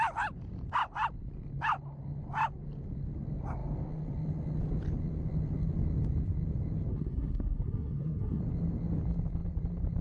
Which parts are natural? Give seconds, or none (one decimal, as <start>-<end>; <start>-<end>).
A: 0.0-6.9; 8.4-10.0